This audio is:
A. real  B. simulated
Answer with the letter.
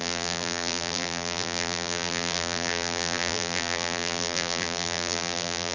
B